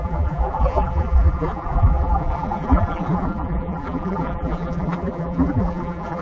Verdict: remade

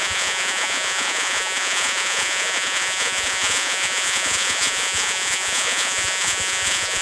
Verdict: remade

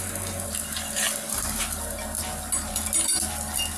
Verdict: recorded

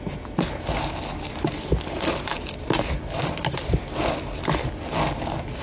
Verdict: recorded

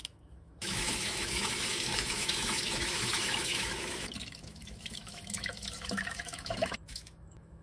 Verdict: remade